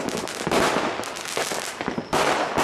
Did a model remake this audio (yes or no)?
no